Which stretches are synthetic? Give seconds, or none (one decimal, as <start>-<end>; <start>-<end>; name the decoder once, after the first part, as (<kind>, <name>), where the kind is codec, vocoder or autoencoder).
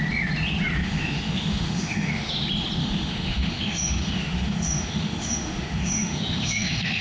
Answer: 0.8-2.3 (autoencoder, DAC-VAE); 2.8-7.0